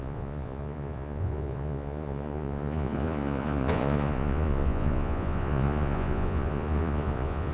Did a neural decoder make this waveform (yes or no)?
yes